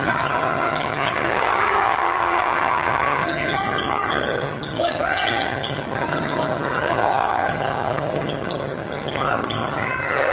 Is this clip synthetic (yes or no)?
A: yes